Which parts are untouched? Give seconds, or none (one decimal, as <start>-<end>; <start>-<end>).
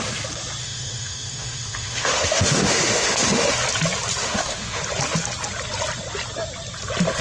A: 0.0-0.6; 3.5-4.2; 4.8-7.2